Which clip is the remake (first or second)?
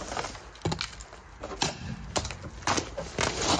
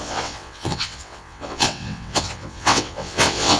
second